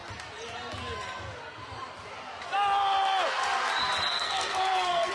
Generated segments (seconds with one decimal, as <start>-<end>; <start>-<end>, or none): 4.1-5.1